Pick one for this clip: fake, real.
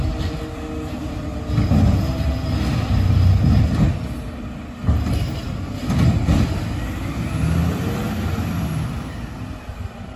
real